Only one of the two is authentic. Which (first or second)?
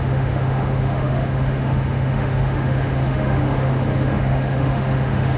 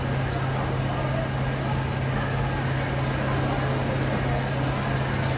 second